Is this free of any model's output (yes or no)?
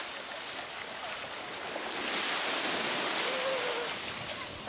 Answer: yes